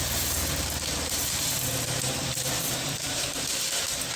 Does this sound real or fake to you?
fake